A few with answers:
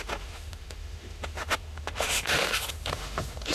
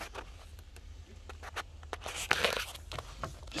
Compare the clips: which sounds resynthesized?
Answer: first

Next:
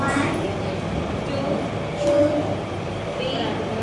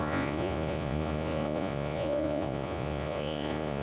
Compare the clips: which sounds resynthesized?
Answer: second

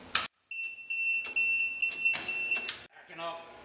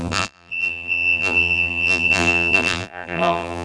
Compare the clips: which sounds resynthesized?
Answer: second